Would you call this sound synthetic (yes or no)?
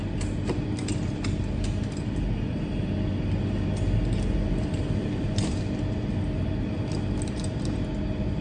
no